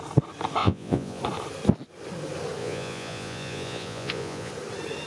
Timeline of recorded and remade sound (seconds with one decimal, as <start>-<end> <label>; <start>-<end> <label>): 0.0-0.6 recorded; 0.6-1.2 remade; 1.2-2.6 recorded; 2.6-4.5 remade; 4.5-5.1 recorded